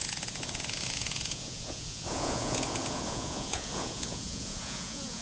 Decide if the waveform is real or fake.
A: fake